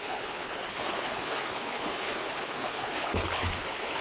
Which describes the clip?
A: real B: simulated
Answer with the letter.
B